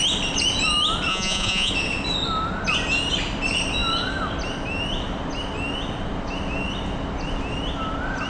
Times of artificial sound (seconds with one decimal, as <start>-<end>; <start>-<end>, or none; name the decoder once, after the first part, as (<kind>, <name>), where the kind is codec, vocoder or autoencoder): 1.1-1.7 (vocoder, Vocos)